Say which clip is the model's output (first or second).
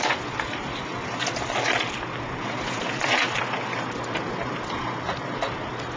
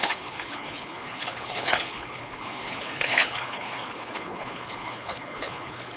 second